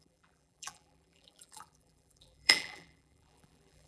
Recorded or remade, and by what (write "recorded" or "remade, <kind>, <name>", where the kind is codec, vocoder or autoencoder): remade, vocoder, BigVGAN v2